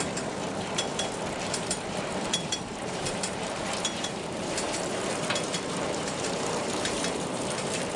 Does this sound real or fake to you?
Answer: fake